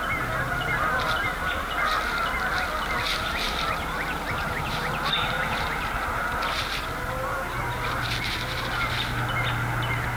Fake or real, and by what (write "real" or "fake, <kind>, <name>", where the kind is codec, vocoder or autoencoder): real